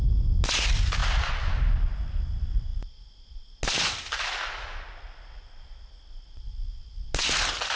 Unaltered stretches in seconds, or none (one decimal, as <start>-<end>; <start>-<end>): 0.0-7.8